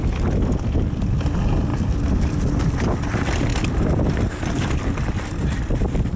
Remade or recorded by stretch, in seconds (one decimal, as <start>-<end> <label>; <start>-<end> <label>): 0.0-6.2 recorded